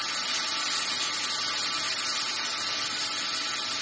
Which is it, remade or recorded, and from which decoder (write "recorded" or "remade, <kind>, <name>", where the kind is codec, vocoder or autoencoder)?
recorded